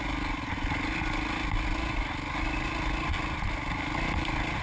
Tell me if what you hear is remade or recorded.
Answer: recorded